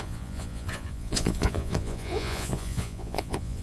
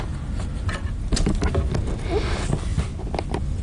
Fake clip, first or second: first